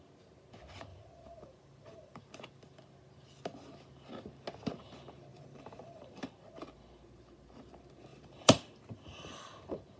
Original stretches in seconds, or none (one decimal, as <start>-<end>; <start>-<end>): 0.0-0.9; 2.2-5.3; 6.3-8.1; 9.6-10.0